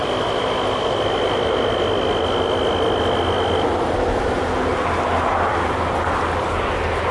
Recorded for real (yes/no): yes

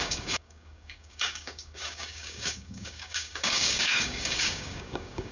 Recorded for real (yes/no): no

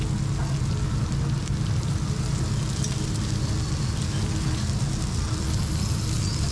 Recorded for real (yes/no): yes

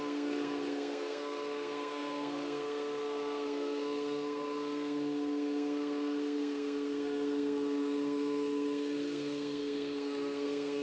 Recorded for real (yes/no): no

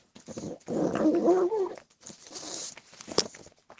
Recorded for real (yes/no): yes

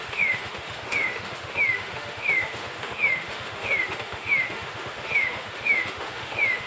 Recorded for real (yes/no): no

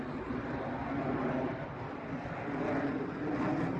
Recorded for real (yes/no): yes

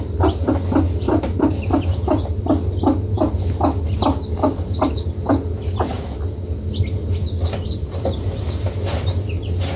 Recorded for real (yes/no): yes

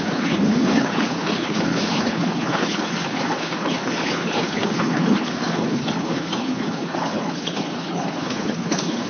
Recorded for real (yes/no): no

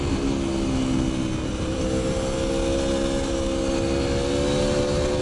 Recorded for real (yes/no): yes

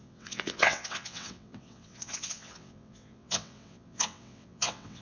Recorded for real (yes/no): no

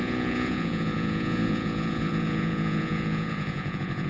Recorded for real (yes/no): no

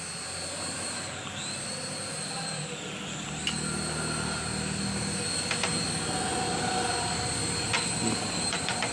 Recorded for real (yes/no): yes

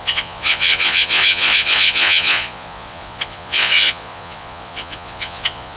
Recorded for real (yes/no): no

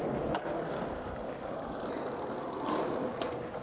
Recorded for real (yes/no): yes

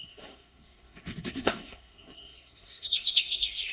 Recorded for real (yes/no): no